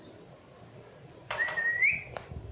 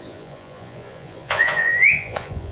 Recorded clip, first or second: first